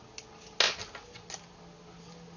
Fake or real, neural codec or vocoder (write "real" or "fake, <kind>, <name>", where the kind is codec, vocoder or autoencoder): real